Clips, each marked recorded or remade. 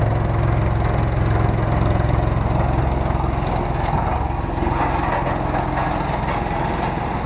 recorded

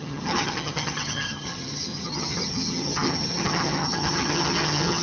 remade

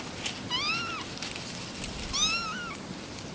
recorded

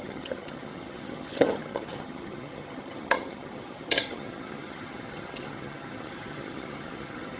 remade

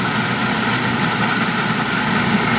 recorded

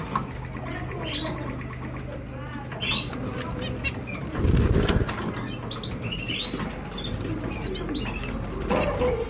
recorded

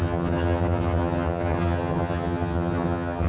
remade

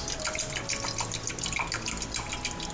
recorded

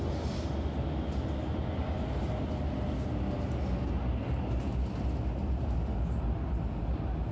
recorded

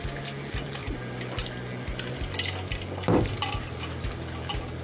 recorded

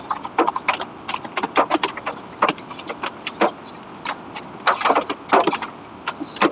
recorded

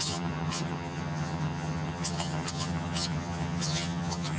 remade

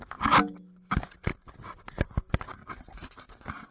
recorded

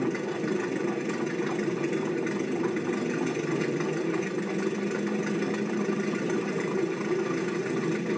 recorded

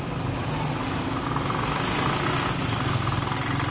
recorded